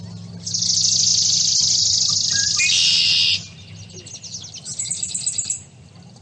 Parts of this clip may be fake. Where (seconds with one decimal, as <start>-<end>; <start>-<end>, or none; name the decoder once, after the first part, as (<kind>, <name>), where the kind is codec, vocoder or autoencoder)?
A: none